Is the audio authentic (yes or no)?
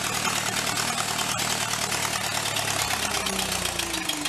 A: yes